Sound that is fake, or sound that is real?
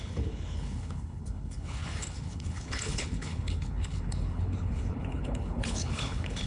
fake